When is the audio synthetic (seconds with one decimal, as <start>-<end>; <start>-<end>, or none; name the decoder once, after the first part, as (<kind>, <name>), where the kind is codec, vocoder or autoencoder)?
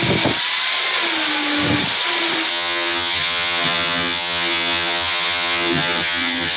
2.5-6.6 (vocoder, HiFi-GAN)